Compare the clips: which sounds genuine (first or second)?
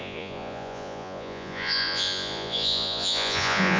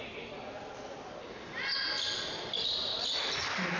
second